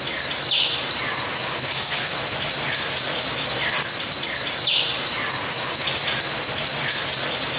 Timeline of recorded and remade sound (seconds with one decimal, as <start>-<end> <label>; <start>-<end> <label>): 0.0-1.7 recorded; 1.7-2.2 remade; 2.2-7.6 recorded

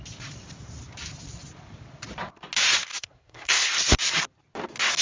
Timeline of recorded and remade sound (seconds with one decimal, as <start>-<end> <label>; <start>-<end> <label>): 0.0-3.0 recorded; 3.0-3.7 remade; 3.7-5.0 recorded

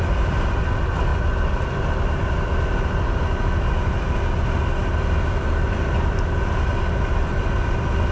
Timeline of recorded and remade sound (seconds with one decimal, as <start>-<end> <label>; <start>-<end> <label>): 0.0-8.1 recorded